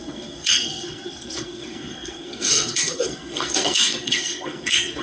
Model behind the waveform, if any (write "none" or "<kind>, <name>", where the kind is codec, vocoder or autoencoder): codec, SNAC